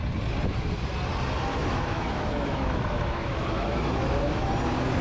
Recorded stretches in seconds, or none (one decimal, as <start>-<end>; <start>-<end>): 0.0-1.5; 4.5-5.0